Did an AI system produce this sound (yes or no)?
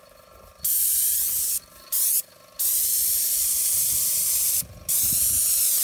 no